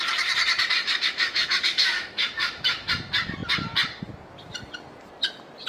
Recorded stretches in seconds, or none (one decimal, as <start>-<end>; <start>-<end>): 0.0-0.8; 2.9-5.7